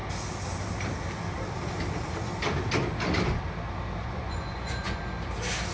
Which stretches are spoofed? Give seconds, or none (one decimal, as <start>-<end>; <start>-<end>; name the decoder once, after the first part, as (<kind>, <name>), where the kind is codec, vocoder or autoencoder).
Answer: 4.0-5.0 (vocoder, Vocos)